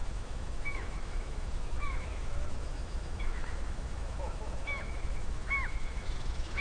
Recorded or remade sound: remade